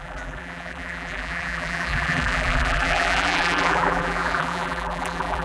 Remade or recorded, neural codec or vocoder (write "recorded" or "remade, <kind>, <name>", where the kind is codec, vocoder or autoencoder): remade, vocoder, BigVGAN v2